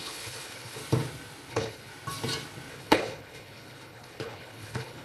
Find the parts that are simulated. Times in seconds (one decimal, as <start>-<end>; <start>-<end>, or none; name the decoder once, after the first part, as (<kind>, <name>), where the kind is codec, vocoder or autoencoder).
0.0-0.8 (codec, HILCodec); 1.5-1.9; 2.7-5.0